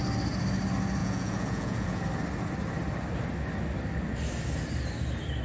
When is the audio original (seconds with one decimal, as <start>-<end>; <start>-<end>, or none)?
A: 0.0-1.0; 2.0-5.4